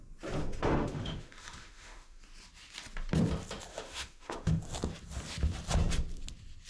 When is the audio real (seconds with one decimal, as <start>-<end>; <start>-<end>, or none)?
0.0-0.4; 2.2-3.7; 4.6-6.7